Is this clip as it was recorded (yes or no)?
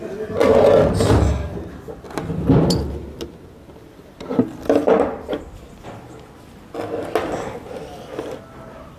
yes